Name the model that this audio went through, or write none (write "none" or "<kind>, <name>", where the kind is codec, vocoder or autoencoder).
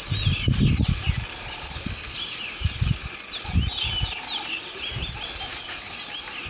none